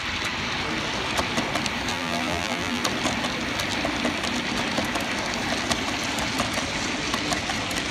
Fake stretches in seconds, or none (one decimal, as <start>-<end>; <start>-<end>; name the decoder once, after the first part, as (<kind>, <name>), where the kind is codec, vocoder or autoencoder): 1.9-2.8 (vocoder, BigVGAN v2)

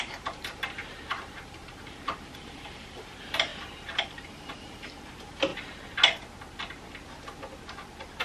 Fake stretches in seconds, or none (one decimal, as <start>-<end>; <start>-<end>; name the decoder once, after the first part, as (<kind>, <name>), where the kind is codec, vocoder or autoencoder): 0.0-5.5 (vocoder, BigVGAN v2)